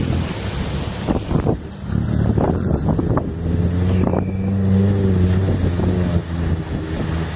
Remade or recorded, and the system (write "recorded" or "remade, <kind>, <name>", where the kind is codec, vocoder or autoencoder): recorded